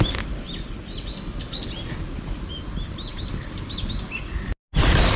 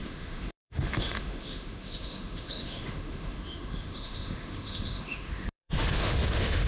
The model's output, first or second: second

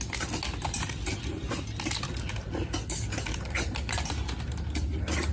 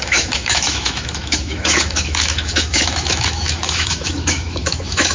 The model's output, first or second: second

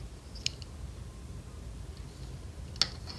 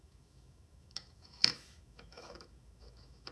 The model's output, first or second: second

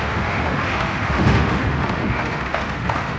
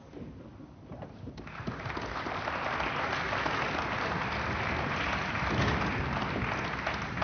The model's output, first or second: first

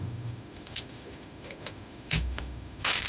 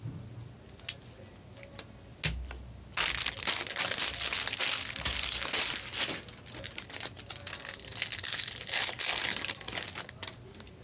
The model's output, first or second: first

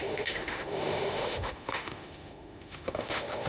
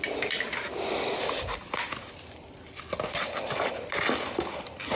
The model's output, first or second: first